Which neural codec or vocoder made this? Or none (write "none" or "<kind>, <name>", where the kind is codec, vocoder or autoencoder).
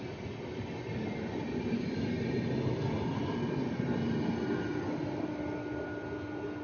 none